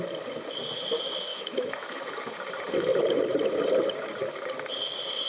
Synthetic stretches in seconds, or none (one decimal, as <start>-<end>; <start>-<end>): 1.3-2.0